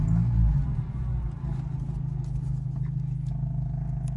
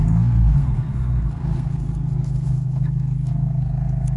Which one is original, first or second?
first